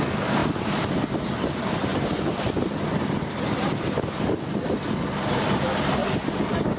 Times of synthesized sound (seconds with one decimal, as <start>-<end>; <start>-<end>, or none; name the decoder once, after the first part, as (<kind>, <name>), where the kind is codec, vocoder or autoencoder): none